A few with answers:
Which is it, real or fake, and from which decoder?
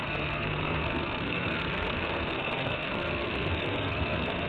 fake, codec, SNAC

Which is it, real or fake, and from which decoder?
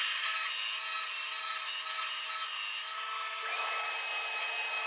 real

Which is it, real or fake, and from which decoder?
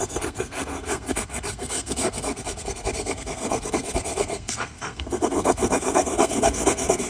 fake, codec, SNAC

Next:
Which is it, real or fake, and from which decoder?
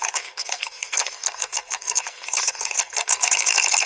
fake, codec, SNAC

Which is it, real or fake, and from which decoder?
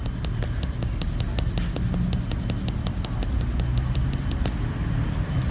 real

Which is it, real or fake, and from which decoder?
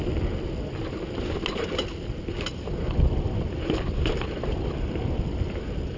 real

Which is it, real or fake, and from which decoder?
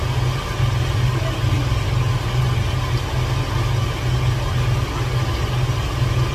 real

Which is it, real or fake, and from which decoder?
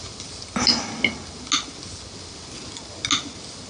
real